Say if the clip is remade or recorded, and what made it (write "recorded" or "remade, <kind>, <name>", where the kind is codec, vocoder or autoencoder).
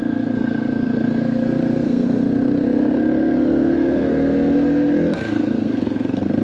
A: remade, codec, SNAC